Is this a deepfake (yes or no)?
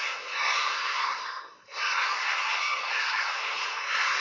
yes